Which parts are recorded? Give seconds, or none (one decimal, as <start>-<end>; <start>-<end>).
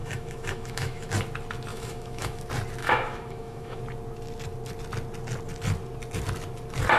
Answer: 1.1-1.7; 2.4-2.8; 3.8-7.0